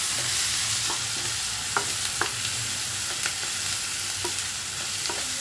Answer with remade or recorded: recorded